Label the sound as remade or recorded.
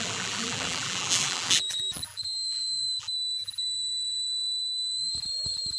remade